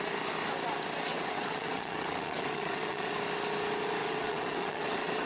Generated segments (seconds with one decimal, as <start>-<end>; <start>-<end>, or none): 1.1-3.1; 4.0-5.3